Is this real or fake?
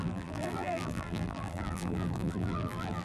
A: fake